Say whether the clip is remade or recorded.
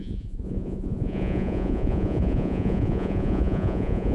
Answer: remade